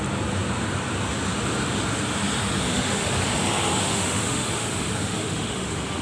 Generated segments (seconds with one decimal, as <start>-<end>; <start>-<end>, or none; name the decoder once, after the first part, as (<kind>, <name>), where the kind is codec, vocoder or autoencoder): 2.7-3.2 (autoencoder, DAC-VAE); 3.8-6.0